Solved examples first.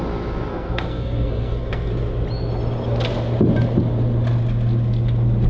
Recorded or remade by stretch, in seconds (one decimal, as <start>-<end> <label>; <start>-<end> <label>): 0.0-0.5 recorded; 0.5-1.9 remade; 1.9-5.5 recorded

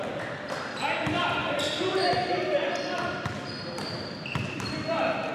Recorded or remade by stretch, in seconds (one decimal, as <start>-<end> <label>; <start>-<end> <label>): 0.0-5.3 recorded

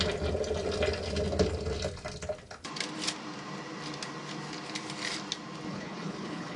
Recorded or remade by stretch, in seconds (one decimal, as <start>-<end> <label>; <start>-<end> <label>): 0.0-5.7 recorded; 5.7-6.6 remade

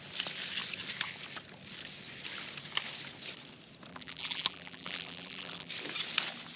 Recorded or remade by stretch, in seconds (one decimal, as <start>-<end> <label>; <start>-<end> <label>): 0.0-3.9 recorded; 3.9-5.7 remade; 5.7-6.6 recorded